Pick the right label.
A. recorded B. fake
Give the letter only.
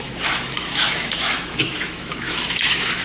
B